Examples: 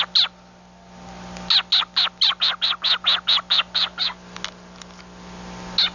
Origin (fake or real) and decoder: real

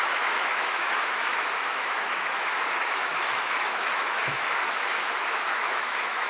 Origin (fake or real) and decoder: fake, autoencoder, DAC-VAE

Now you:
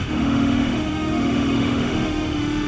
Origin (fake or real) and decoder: fake, autoencoder, DAC-VAE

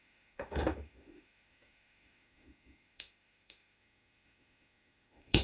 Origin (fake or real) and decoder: fake, autoencoder, DAC-VAE